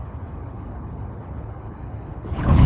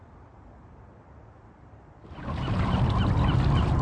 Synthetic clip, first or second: first